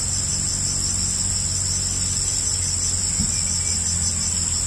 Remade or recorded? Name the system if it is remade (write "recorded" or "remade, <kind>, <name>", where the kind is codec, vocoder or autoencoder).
recorded